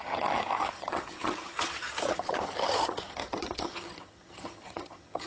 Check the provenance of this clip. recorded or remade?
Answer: remade